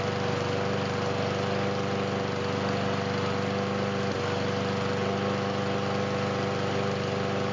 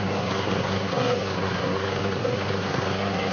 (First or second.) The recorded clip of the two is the first